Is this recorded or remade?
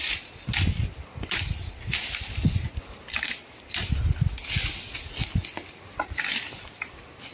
recorded